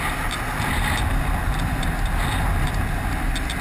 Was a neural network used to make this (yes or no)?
no